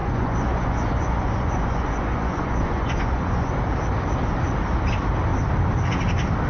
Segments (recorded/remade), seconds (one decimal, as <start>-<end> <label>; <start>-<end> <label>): 0.0-3.5 remade; 3.5-6.5 recorded